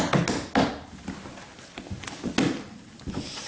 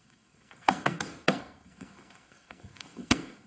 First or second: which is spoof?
second